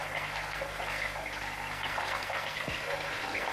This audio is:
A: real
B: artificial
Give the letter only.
B